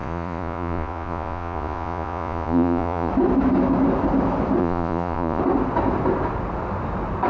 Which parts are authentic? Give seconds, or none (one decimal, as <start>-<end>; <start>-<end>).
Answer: 3.1-4.6; 5.4-7.3